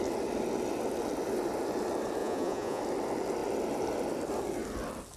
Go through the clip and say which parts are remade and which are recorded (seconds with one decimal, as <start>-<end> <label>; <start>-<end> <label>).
0.0-2.2 recorded; 2.2-2.8 remade; 2.8-5.2 recorded